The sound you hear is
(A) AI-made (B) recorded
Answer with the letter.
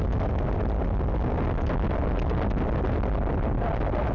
B